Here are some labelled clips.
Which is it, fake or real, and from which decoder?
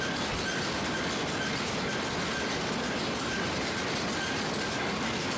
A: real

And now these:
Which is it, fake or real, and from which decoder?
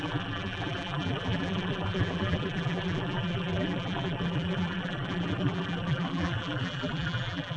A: fake, vocoder, BigVGAN v2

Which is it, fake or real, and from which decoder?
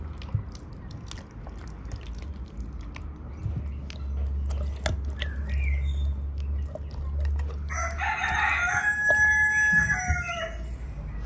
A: real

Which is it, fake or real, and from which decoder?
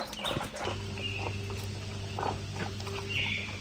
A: real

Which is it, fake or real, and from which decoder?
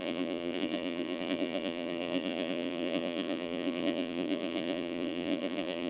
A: fake, vocoder, BigVGAN v2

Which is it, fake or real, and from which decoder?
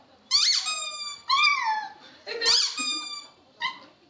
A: fake, vocoder, BigVGAN v2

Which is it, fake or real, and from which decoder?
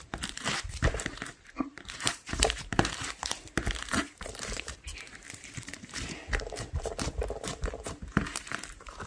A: fake, vocoder, BigVGAN v2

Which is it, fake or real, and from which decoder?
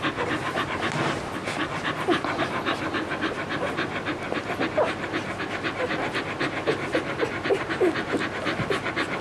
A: real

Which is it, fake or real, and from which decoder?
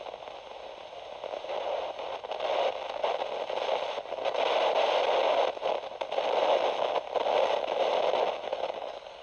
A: real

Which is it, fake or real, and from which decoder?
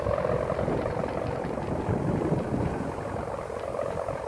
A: fake, vocoder, BigVGAN v2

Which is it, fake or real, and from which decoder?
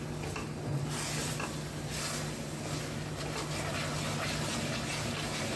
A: real